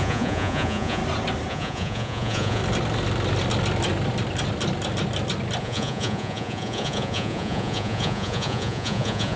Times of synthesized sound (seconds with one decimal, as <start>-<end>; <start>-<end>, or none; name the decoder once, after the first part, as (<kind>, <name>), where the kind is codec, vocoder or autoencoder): 0.0-1.0 (vocoder, Vocos); 1.5-2.6; 5.6-9.4